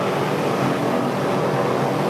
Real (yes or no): yes